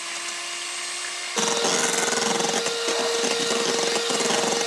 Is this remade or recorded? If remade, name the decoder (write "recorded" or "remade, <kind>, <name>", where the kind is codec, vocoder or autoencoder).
recorded